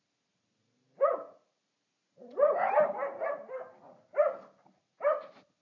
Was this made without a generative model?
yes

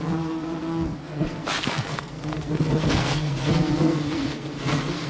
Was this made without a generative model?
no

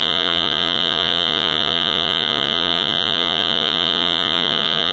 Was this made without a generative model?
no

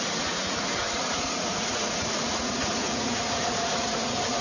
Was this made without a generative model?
no